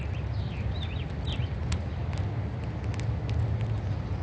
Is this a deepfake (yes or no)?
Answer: no